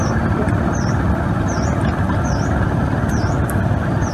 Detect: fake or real real